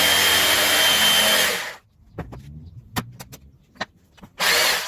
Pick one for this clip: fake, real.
real